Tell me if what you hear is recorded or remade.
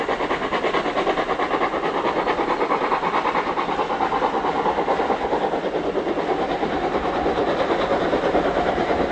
recorded